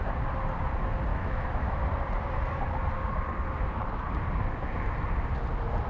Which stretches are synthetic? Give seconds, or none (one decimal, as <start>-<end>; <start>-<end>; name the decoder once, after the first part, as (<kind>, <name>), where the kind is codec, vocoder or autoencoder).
1.1-1.8 (autoencoder, DAC-VAE)